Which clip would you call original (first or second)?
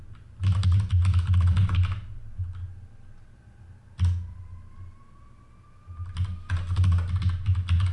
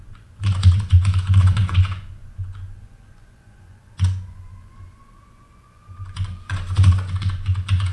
first